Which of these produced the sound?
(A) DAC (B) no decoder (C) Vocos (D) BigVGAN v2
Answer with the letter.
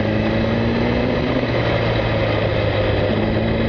B